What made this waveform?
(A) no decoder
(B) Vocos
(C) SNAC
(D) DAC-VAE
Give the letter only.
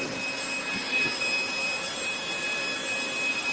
A